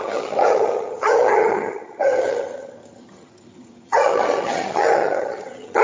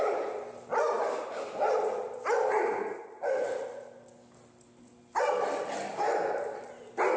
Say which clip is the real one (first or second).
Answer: second